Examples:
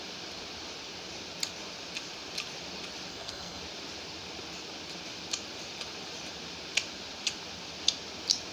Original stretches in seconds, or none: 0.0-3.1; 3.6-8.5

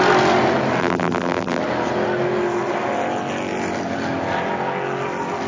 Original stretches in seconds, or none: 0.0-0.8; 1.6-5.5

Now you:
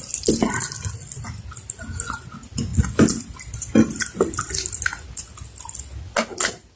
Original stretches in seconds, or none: 0.0-6.8

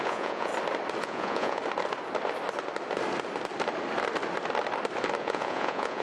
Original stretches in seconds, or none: 0.5-1.0; 1.6-5.2